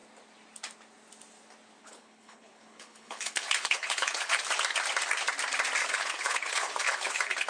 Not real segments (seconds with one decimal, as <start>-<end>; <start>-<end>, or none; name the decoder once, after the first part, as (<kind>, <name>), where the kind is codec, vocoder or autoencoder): 1.8-4.4 (codec, HILCodec); 5.8-7.5